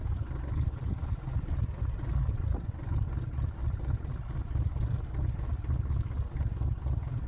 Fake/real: real